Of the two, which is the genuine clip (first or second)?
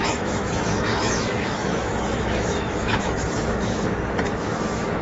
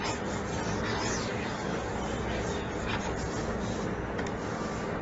second